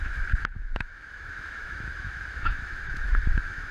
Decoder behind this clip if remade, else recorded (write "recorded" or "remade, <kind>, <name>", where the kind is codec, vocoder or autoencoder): remade, autoencoder, DAC-VAE